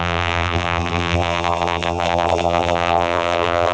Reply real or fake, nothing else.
fake